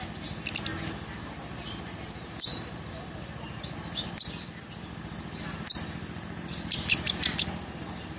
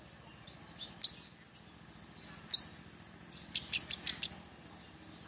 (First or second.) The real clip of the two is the second